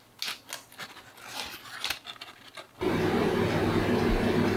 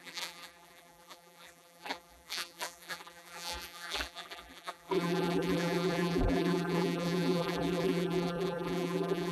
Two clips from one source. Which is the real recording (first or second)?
first